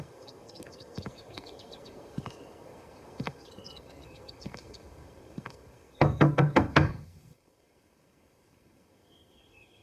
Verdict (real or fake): fake